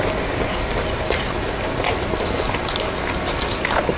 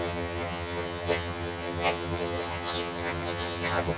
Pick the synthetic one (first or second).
second